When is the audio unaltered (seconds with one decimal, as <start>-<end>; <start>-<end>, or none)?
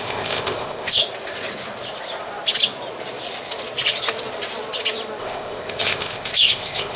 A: 1.0-5.2